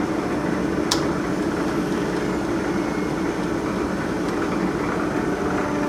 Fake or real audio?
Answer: real